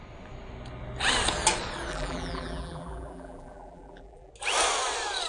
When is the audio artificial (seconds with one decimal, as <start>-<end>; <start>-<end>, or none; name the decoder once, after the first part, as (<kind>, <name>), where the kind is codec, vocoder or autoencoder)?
1.9-4.3 (vocoder, BigVGAN v2)